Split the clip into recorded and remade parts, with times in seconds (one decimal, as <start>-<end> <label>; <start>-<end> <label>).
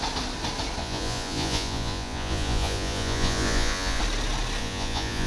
0.0-0.8 recorded; 0.8-4.0 remade; 4.0-4.6 recorded; 4.6-5.3 remade